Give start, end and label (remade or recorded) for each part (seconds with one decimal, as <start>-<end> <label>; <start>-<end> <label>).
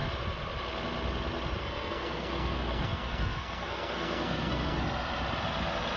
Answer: 0.0-1.6 recorded; 1.6-4.8 remade; 4.8-6.0 recorded